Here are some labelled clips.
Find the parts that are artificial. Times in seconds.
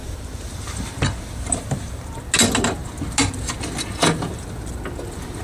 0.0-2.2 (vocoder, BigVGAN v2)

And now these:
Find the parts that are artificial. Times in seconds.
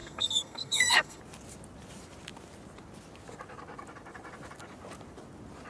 0.0-1.2 (codec, SNAC)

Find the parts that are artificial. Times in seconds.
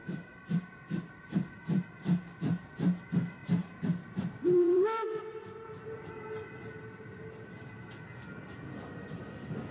3.4-6.1 (vocoder, BigVGAN v2)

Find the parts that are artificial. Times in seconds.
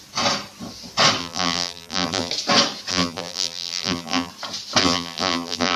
1.2-2.3 (vocoder, BigVGAN v2); 2.9-4.3; 4.8-5.8